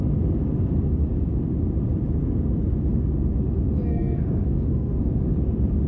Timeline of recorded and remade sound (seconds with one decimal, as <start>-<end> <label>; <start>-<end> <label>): 0.0-3.9 recorded; 3.9-5.1 remade; 5.1-5.9 recorded